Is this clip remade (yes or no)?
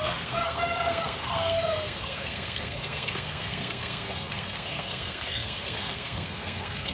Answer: yes